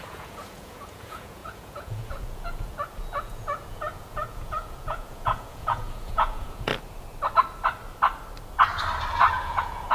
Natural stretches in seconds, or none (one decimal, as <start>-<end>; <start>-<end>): 6.7-9.3